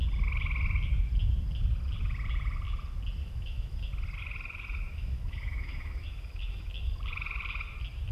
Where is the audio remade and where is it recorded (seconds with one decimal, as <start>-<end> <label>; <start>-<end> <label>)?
0.0-3.2 recorded; 3.2-3.9 remade; 3.9-4.9 recorded; 4.9-6.9 remade; 6.9-8.1 recorded